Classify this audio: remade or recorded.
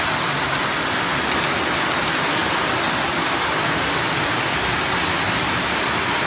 recorded